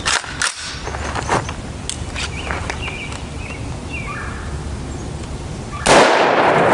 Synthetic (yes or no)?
no